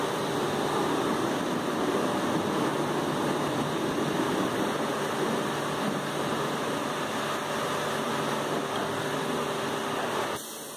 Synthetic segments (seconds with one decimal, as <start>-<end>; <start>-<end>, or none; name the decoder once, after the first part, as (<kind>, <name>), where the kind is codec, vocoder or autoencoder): none